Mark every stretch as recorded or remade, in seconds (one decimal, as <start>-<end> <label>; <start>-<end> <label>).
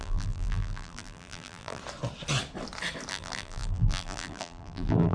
0.0-1.8 remade; 1.8-3.1 recorded; 3.1-5.1 remade